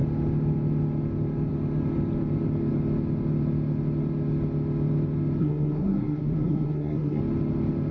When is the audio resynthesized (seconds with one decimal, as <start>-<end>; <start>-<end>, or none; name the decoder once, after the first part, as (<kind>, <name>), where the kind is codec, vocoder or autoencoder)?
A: 5.4-7.2 (codec, SNAC)